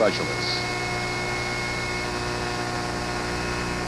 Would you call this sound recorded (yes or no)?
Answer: yes